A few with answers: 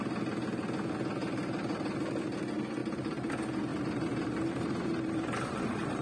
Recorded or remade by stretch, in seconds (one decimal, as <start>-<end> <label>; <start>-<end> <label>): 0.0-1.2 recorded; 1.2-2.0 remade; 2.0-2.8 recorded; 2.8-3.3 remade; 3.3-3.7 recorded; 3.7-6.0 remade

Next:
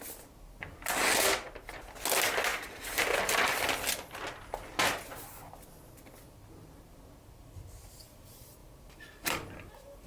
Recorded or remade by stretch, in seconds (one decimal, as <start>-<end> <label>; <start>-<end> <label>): 0.0-2.5 recorded; 2.5-4.1 remade; 4.1-8.6 recorded; 8.6-10.1 remade

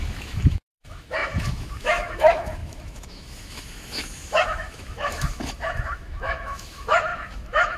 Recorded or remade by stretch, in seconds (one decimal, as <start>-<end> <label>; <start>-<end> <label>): 0.0-7.8 remade

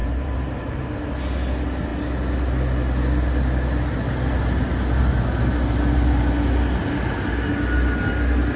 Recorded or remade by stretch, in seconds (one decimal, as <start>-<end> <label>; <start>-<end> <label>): 0.0-1.1 remade; 1.1-8.6 recorded

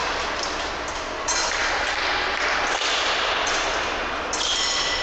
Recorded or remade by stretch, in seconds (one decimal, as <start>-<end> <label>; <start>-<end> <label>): 0.0-1.2 recorded; 1.2-1.6 remade; 1.6-2.7 recorded; 2.7-5.0 remade